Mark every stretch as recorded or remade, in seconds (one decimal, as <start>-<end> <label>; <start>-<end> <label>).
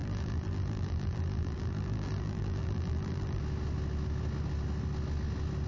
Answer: 0.0-3.4 remade; 3.4-5.7 recorded